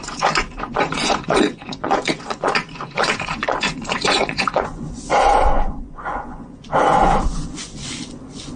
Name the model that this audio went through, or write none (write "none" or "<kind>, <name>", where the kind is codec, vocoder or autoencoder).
vocoder, Vocos